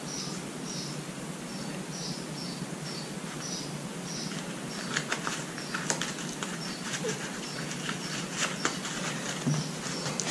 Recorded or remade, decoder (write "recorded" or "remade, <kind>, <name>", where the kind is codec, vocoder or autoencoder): recorded